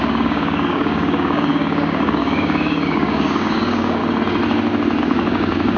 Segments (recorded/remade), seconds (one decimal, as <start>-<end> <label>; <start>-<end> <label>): 0.0-4.0 remade; 4.0-5.0 recorded; 5.0-5.8 remade